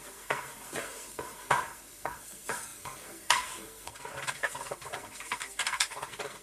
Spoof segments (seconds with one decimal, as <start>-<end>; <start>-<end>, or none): 0.0-6.4